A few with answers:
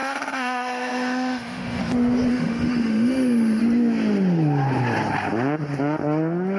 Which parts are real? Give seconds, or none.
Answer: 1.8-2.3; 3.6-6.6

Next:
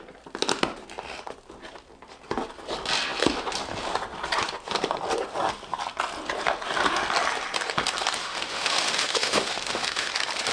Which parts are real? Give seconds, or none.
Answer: 0.0-8.2; 10.1-10.5

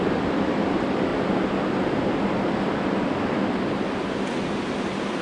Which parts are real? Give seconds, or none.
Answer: 0.0-5.2

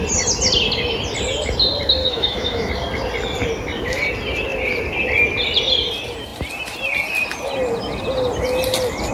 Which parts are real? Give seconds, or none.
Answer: 0.0-2.0; 2.7-9.1

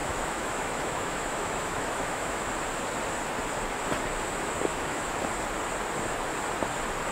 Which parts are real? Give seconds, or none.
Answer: 2.5-4.7; 5.2-7.1

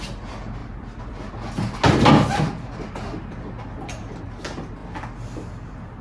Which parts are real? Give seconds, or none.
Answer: 0.0-6.0

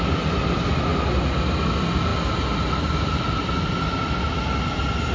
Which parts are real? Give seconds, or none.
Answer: 0.0-5.1

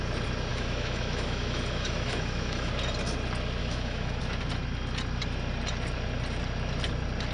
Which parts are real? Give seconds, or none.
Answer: 0.0-0.5; 2.7-3.6; 4.2-7.3